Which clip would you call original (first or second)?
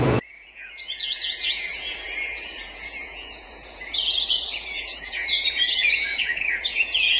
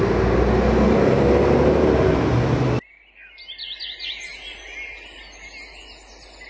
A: second